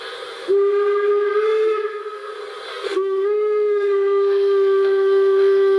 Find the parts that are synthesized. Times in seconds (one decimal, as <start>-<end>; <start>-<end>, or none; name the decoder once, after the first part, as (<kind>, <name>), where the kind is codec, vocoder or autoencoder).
1.1-2.3 (codec, SNAC); 2.7-5.8